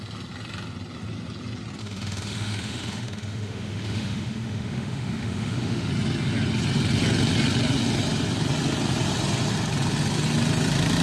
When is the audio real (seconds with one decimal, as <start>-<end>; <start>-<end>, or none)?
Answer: 0.0-1.8; 5.9-11.0